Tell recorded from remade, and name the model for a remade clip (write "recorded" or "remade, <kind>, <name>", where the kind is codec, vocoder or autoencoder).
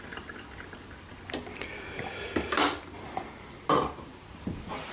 recorded